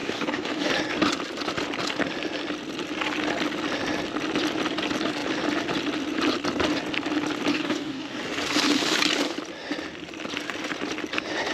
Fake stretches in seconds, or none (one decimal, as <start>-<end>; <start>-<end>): 0.0-0.7; 7.5-8.2